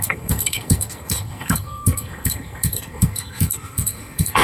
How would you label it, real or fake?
fake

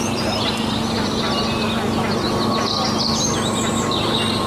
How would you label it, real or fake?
real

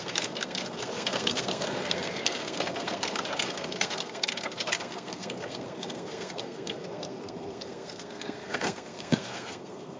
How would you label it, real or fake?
fake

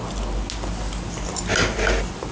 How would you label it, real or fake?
real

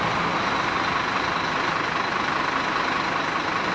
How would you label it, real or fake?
real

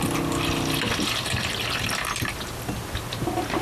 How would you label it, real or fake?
real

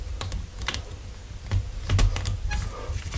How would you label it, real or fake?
real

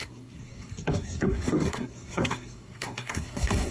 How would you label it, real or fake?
fake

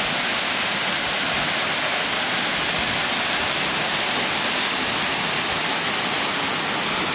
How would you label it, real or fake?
real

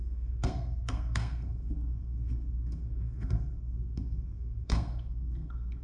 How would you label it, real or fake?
fake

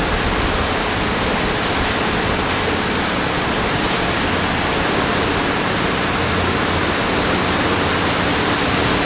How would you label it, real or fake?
real